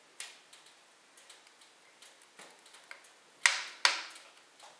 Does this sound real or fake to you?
real